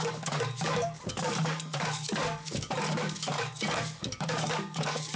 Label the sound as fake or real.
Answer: fake